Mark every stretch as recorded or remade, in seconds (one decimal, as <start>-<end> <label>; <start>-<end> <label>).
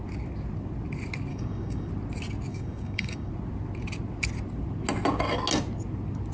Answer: 0.0-1.3 recorded; 1.3-1.9 remade; 1.9-2.5 recorded; 2.5-3.3 remade; 3.3-6.3 recorded